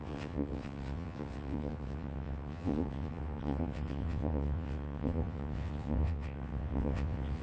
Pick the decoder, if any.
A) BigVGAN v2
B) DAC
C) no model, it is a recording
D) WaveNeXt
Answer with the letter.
D